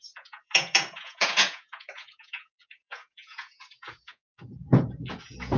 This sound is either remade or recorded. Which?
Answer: remade